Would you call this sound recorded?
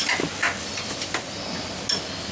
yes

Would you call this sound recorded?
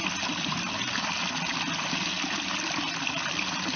yes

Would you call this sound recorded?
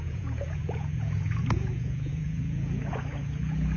no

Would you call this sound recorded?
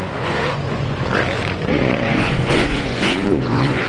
no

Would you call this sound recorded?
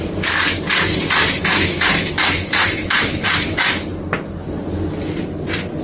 yes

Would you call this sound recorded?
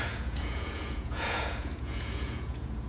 no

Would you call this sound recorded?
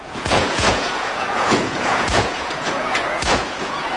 no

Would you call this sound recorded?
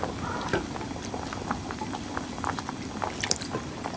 yes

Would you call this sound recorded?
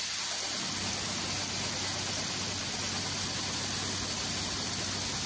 yes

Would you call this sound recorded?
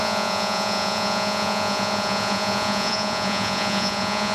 no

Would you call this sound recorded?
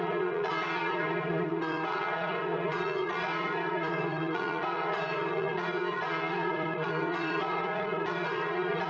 no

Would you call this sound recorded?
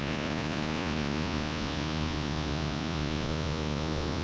no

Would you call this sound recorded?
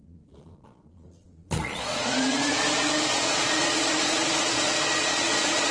no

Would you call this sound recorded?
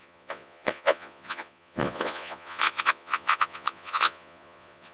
no